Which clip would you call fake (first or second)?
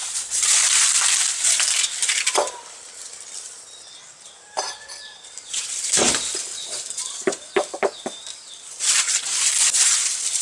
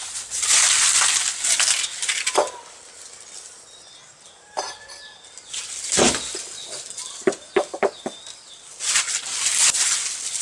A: first